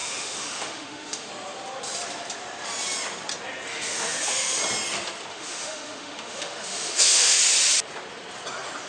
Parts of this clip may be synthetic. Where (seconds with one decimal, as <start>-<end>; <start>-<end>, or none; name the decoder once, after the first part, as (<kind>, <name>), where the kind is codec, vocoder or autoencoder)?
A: 0.0-1.3 (autoencoder, DAC-VAE); 3.7-4.6; 5.3-7.4

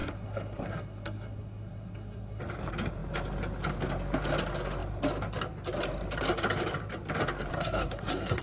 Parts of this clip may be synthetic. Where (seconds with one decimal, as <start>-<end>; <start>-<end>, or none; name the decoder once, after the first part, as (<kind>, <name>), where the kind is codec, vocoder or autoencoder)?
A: 0.0-2.4 (codec, SNAC); 7.5-8.4

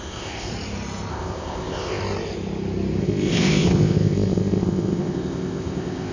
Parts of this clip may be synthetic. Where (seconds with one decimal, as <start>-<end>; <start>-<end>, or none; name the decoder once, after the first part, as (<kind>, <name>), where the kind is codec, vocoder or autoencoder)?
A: 0.0-0.5 (codec, ZipCodec); 1.1-2.0; 3.0-6.1

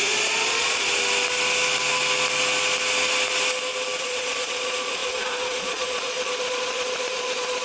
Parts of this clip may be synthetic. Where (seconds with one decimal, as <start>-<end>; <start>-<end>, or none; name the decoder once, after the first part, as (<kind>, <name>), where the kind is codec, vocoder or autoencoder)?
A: 0.0-0.9 (vocoder, Vocos); 4.0-7.6

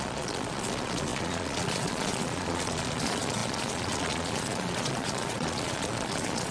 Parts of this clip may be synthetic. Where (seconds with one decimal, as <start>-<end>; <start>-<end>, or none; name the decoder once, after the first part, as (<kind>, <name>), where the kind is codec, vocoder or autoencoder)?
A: 0.0-6.5 (vocoder, Vocos)

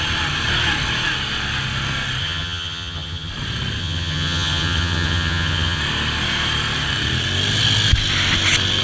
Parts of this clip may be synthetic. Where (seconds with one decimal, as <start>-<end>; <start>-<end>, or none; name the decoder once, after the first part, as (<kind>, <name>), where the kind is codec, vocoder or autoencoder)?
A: 2.2-3.3 (vocoder, HiFi-GAN); 3.8-5.8

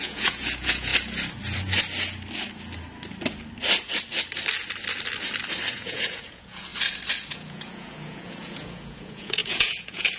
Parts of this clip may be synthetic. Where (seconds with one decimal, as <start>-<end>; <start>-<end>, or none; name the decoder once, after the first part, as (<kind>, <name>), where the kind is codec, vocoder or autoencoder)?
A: 0.0-0.9 (vocoder, Vocos); 5.7-6.7; 7.3-10.2